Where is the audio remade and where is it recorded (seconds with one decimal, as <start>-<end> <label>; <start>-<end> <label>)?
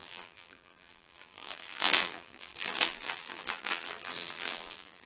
0.0-5.1 remade